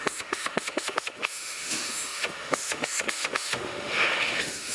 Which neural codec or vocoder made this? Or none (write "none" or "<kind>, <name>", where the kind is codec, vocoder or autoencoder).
autoencoder, DAC-VAE